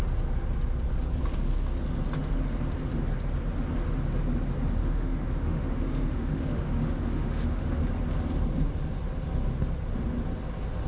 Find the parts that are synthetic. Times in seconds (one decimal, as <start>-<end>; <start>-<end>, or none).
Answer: 4.8-7.8